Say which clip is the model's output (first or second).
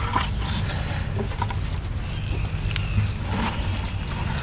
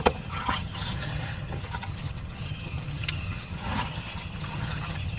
second